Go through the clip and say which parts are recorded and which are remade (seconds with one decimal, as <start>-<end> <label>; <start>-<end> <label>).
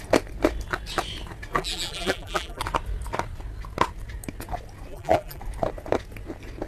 0.0-1.5 recorded; 1.5-2.6 remade; 2.6-4.9 recorded; 4.9-5.4 remade; 5.4-6.7 recorded